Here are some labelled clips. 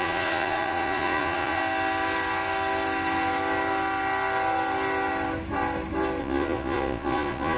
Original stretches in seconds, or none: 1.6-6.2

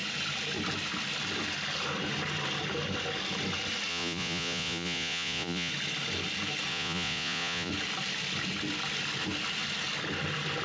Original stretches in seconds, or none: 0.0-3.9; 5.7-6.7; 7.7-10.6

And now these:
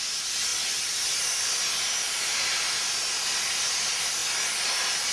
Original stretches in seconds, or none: 0.0-5.1

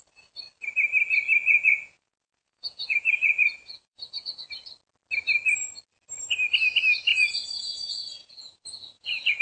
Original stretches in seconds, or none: 0.0-1.4; 4.4-7.1